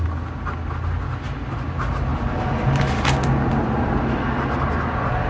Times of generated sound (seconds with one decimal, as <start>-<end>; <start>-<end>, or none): none